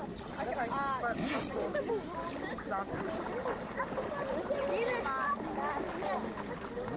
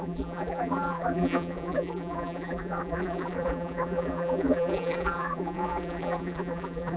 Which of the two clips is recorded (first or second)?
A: first